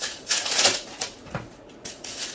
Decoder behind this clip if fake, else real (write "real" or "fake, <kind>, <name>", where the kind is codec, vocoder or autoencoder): fake, vocoder, Vocos